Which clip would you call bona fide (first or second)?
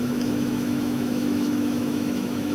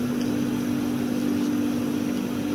second